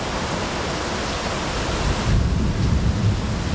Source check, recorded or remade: recorded